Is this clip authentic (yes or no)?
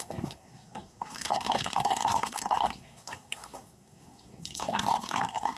no